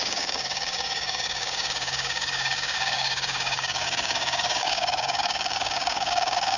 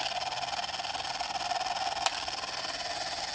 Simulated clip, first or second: first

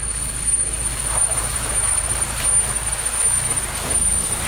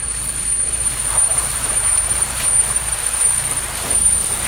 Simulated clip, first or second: second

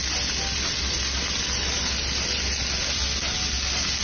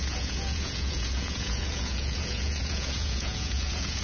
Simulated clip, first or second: second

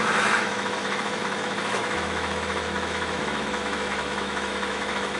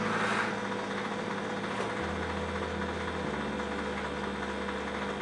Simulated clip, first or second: first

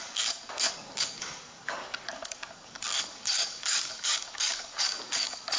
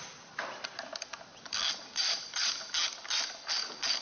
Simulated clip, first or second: first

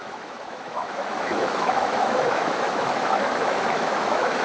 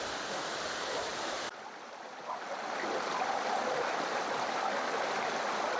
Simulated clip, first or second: first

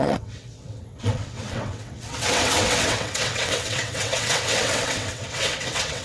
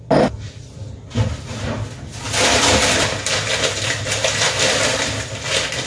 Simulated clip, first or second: first